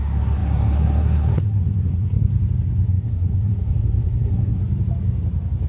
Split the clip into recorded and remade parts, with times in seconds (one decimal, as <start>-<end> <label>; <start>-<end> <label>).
0.0-2.3 remade; 2.3-2.9 recorded; 2.9-4.6 remade; 4.6-5.7 recorded